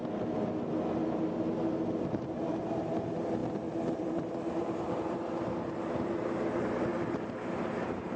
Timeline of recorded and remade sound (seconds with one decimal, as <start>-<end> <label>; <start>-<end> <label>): 0.0-2.1 recorded; 2.1-3.4 remade; 3.4-4.0 recorded; 4.0-6.9 remade; 6.9-7.4 recorded; 7.4-8.2 remade